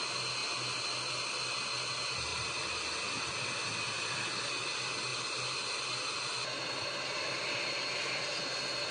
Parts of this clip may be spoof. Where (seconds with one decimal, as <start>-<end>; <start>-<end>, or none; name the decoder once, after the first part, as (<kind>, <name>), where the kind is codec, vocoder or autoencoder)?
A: 0.4-1.6 (vocoder, BigVGAN v2); 2.3-3.1; 5.1-8.1